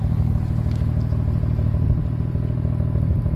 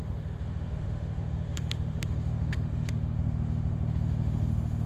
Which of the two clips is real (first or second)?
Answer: first